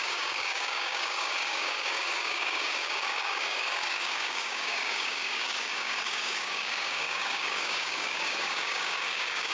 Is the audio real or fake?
fake